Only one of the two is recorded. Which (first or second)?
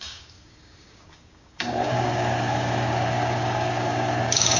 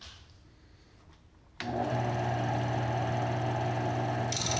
second